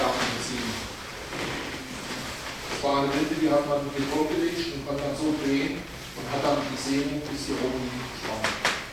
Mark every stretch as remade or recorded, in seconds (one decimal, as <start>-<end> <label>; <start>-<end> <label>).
0.0-8.9 recorded